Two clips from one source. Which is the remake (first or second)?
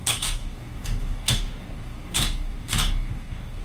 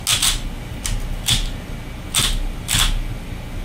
first